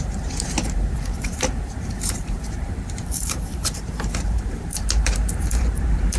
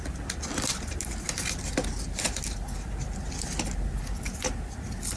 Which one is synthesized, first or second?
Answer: first